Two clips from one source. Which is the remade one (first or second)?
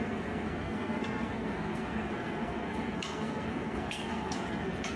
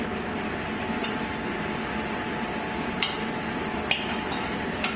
first